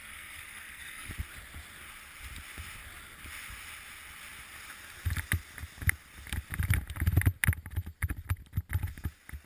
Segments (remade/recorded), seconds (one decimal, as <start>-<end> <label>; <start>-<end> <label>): 0.0-1.1 remade; 1.1-9.5 recorded